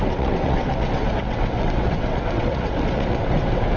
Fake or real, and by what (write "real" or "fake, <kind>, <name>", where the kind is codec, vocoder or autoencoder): fake, vocoder, WaveNeXt